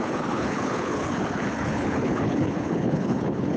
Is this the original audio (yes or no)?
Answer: no